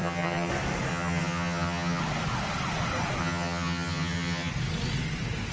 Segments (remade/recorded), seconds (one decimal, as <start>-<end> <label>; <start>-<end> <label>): 0.0-0.5 remade; 0.5-0.9 recorded; 0.9-2.0 remade; 2.0-3.2 recorded; 3.2-4.5 remade; 4.5-5.5 recorded